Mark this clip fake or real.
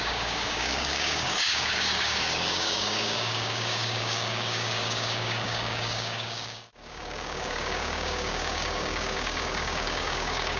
fake